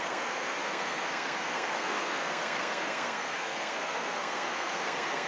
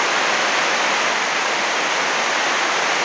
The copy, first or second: first